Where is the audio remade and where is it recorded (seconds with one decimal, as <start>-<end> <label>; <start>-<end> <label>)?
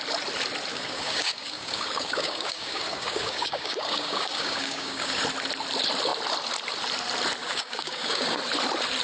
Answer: 0.0-0.7 recorded; 0.7-5.2 remade; 5.2-7.4 recorded; 7.4-8.4 remade; 8.4-9.0 recorded